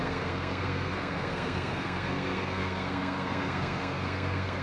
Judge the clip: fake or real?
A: fake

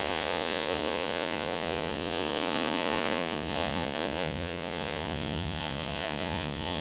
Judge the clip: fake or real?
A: fake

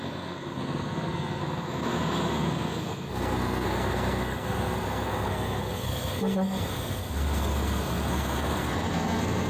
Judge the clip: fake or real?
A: fake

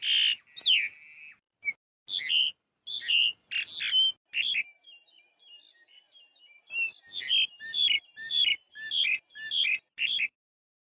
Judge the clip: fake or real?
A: real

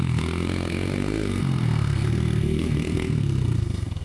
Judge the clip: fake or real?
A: fake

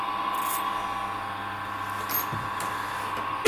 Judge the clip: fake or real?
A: real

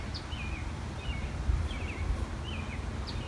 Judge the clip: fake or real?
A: real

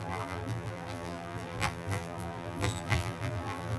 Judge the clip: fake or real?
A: fake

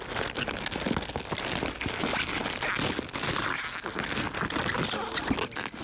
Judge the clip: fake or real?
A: real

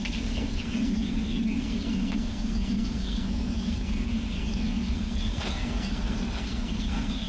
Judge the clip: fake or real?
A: fake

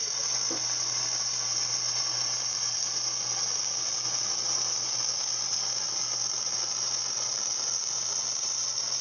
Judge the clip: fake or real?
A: real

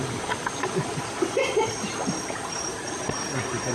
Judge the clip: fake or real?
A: real